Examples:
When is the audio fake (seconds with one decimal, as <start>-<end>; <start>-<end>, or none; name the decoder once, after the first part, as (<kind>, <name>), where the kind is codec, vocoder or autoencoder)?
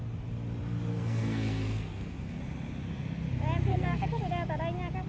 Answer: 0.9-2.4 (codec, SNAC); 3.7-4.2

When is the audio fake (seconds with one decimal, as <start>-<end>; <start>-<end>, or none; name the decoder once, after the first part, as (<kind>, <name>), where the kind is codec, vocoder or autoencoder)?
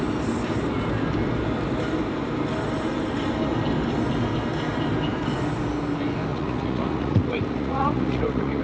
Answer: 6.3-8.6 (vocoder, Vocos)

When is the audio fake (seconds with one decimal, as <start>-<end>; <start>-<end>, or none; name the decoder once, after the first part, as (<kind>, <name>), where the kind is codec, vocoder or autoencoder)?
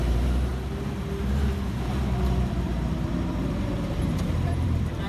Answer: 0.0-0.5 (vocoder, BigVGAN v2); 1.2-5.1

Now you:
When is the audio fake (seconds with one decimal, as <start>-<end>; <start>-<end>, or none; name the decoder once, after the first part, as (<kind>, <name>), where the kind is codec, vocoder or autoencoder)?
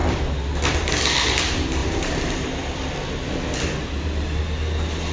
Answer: 1.8-2.9 (vocoder, BigVGAN v2); 3.8-4.4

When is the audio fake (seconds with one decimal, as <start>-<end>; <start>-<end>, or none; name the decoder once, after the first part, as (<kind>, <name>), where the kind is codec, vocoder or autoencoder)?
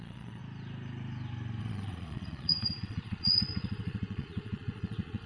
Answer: 0.0-0.4 (vocoder, Vocos); 1.6-5.3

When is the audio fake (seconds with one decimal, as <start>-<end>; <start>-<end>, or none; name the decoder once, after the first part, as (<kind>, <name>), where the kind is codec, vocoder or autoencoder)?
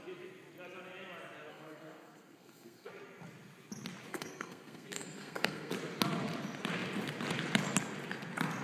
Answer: 1.5-2.9 (codec, SNAC); 4.1-5.7